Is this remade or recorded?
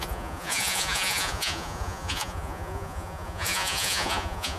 remade